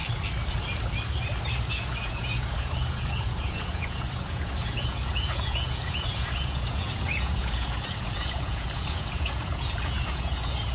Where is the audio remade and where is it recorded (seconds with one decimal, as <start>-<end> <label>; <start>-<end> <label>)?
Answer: 0.0-1.7 recorded; 1.7-10.7 remade